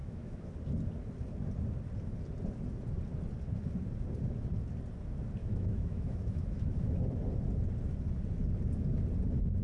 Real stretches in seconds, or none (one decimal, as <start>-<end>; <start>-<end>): 0.5-5.4; 7.0-9.6